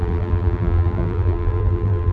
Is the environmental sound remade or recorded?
remade